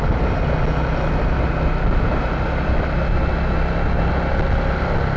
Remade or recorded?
recorded